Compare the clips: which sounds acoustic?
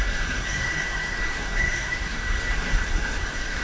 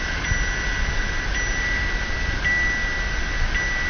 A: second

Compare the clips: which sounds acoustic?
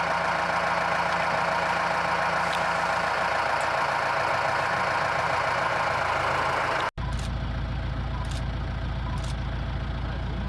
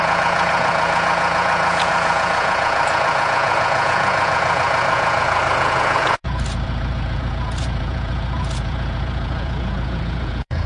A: first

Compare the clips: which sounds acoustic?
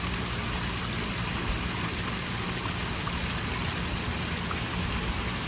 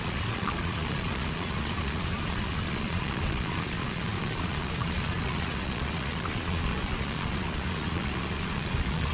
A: first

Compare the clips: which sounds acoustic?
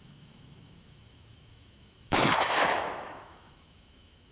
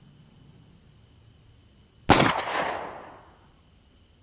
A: second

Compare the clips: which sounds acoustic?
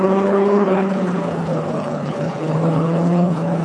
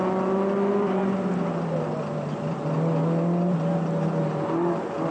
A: second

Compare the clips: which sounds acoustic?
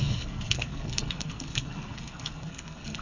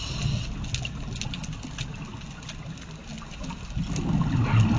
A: second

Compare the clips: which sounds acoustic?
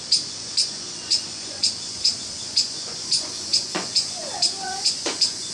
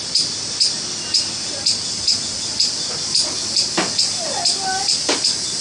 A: second